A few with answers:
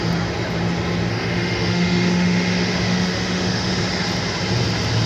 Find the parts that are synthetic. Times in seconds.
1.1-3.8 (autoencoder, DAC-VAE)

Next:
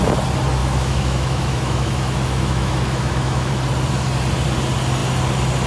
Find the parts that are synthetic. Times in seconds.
0.6-3.5 (autoencoder, DAC-VAE)